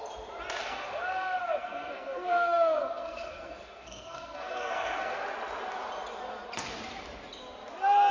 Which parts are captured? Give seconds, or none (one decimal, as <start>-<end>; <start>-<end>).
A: 0.0-0.6; 5.2-8.1